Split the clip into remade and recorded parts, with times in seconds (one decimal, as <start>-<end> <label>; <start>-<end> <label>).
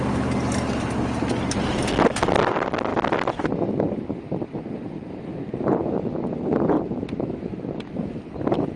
0.0-8.8 recorded